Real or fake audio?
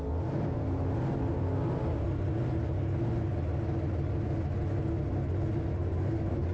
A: real